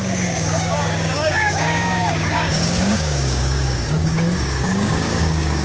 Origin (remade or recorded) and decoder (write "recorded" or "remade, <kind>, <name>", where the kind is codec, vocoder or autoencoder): remade, codec, DAC